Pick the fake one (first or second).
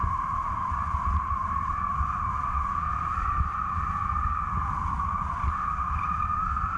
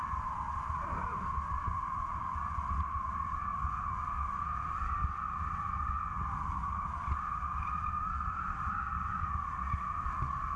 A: first